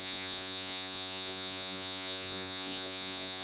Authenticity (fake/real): fake